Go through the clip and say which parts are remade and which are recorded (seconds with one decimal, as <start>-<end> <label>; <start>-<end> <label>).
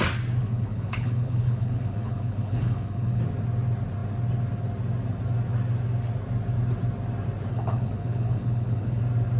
0.0-0.4 recorded; 0.4-3.2 remade; 3.2-7.5 recorded; 7.5-9.0 remade; 9.0-9.4 recorded